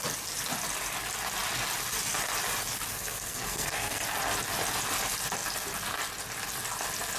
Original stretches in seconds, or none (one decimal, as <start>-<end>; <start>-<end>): 0.0-2.9; 4.0-7.2